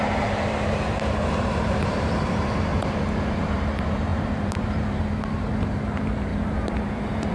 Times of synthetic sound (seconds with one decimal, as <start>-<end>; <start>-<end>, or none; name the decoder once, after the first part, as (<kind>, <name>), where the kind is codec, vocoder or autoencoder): 0.0-2.7 (vocoder, BigVGAN v2); 3.3-7.3